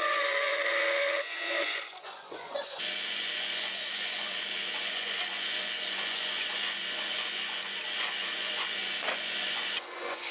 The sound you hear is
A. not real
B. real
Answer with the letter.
A